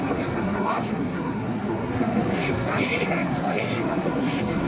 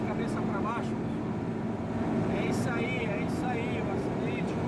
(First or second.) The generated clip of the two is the first